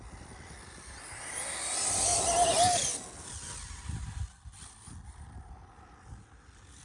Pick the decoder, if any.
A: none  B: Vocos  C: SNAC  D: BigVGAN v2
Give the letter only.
A